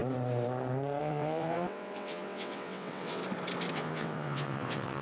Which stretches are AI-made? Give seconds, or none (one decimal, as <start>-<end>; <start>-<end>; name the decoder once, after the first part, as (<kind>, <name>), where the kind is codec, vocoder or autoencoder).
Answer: 1.0-3.2 (vocoder, WaveNeXt); 3.7-5.0